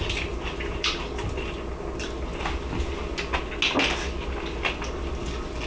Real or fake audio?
real